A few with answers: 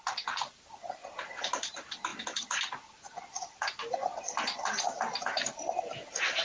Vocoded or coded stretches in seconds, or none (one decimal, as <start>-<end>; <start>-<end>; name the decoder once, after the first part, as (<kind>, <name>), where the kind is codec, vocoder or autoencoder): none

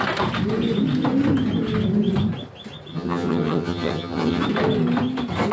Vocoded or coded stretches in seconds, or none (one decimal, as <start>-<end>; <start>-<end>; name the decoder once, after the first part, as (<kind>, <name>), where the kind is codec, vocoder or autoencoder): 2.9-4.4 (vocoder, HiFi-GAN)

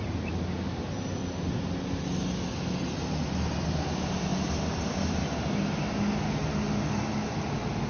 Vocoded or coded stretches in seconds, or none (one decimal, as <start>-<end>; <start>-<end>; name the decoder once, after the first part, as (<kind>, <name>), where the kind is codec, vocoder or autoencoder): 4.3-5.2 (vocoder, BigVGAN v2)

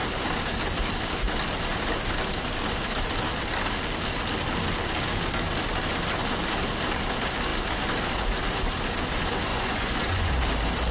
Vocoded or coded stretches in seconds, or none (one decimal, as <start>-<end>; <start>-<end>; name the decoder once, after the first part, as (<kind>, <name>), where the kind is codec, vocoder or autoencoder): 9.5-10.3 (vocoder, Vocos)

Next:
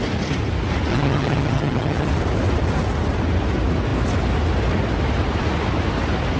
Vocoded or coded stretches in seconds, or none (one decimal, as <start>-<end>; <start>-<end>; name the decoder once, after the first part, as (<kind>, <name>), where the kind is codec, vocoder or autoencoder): 0.9-2.1 (vocoder, HiFi-GAN)